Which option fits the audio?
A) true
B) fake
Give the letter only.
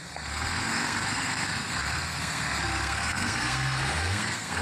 B